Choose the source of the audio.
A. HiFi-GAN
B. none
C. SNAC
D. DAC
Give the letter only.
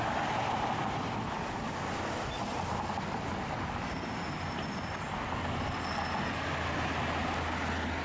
B